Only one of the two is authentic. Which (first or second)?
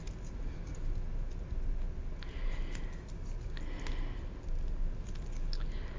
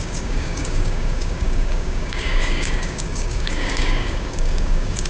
first